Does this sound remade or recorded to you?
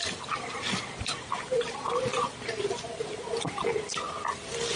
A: recorded